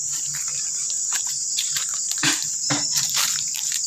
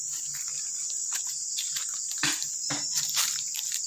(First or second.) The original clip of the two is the second